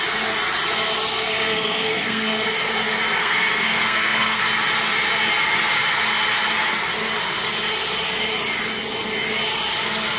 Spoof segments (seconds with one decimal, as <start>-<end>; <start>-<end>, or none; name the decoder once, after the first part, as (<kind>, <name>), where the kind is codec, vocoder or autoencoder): 1.1-2.5 (codec, SNAC); 3.2-4.4